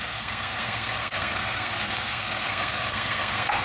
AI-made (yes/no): yes